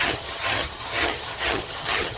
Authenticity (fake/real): fake